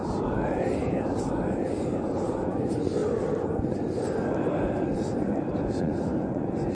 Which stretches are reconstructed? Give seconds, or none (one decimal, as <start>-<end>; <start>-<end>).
2.5-3.0; 5.8-6.7